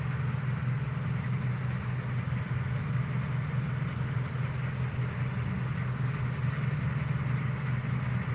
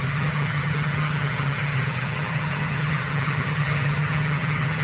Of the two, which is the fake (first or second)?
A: second